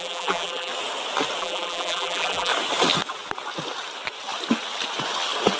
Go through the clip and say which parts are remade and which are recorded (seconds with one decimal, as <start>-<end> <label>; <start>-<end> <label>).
0.0-0.7 remade; 0.7-1.4 recorded; 1.4-2.5 remade; 2.5-5.6 recorded